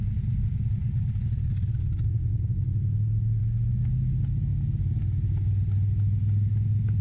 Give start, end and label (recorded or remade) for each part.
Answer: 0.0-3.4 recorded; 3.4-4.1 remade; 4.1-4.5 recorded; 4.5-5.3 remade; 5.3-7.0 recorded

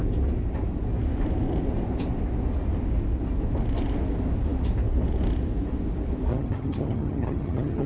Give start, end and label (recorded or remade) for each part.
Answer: 0.0-6.3 recorded; 6.3-7.9 remade

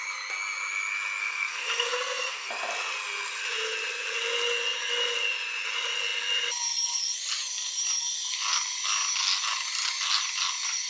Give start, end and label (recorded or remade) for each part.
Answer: 0.0-1.2 recorded; 1.2-2.5 remade; 2.5-10.9 recorded

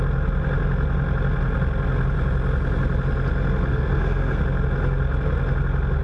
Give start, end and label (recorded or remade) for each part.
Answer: 0.0-3.7 recorded; 3.7-4.4 remade; 4.4-6.0 recorded